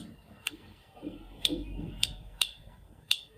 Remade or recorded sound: remade